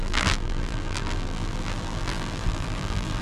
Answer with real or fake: fake